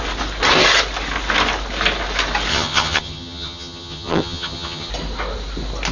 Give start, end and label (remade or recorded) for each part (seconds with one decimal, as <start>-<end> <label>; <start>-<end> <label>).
0.0-2.5 recorded; 2.5-4.9 remade; 4.9-5.9 recorded